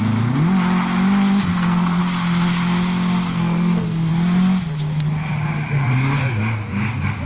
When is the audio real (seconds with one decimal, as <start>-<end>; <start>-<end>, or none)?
0.0-1.5; 2.0-3.3; 4.1-7.3